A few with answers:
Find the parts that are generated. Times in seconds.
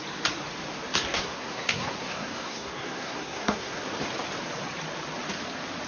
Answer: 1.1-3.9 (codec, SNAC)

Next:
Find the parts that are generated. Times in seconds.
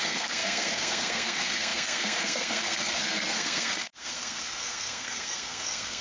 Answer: 0.0-6.0 (codec, SNAC)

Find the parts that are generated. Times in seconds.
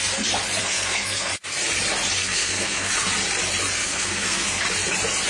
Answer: 0.6-1.3 (codec, SNAC); 2.2-2.9; 3.8-4.6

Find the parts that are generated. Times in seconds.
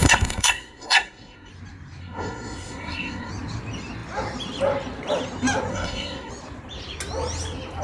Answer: 0.0-1.5 (codec, SNAC); 2.0-3.3; 5.7-6.3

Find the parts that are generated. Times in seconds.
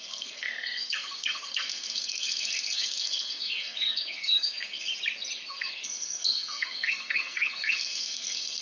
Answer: 0.0-4.9 (codec, SNAC); 5.5-8.6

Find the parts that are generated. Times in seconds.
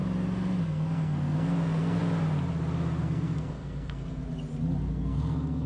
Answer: 0.6-2.0 (codec, SNAC); 3.0-4.2; 4.9-5.7